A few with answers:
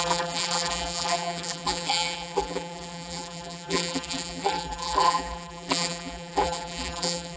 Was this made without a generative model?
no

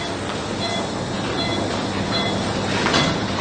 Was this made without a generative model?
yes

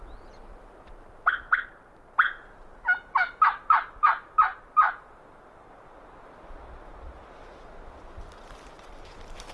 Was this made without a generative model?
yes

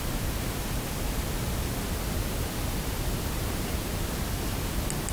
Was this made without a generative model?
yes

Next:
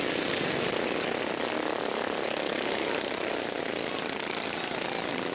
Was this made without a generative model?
yes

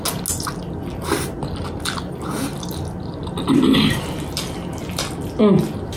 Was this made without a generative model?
yes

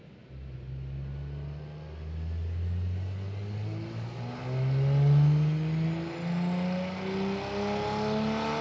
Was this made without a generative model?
yes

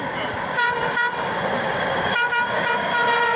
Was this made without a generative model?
yes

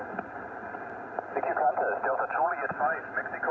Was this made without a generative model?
yes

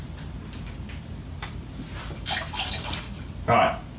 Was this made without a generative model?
yes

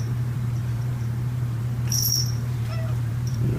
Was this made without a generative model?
no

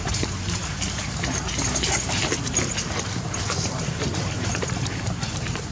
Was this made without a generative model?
no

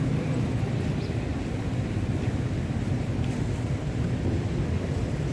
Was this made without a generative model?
no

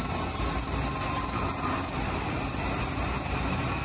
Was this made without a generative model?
yes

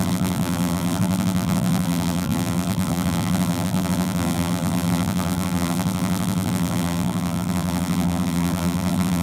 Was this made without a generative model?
no